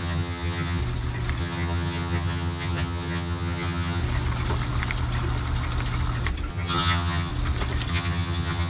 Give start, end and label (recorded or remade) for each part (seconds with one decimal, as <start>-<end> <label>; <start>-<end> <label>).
0.0-0.8 remade; 0.8-1.4 recorded; 1.4-4.0 remade; 4.0-6.5 recorded; 6.5-7.3 remade; 7.3-7.9 recorded; 7.9-8.7 remade

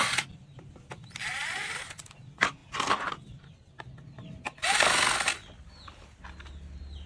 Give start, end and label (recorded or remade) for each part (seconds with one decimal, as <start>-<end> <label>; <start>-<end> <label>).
0.0-7.1 recorded

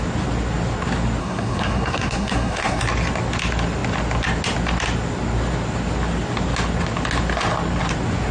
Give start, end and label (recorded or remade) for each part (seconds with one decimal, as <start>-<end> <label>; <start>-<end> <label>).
0.0-1.2 recorded; 1.2-2.8 remade; 2.8-8.3 recorded

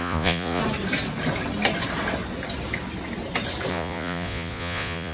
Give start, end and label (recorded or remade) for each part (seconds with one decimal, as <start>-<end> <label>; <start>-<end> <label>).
0.0-0.6 remade; 0.6-3.7 recorded; 3.7-5.1 remade

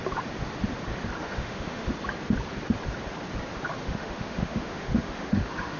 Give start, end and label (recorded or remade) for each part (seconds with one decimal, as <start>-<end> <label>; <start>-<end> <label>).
0.0-1.2 recorded; 1.2-1.9 remade; 1.9-3.8 recorded; 3.8-5.8 remade

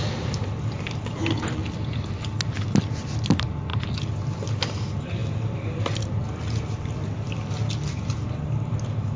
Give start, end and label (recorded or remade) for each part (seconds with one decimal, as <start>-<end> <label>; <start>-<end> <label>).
0.0-9.2 recorded

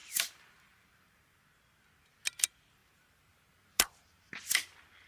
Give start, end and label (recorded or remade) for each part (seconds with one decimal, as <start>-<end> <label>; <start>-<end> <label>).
0.0-1.4 remade; 1.4-2.8 recorded; 2.8-4.3 remade; 4.3-5.1 recorded

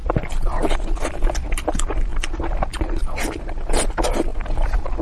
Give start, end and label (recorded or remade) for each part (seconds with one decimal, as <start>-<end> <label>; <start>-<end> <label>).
0.0-5.0 recorded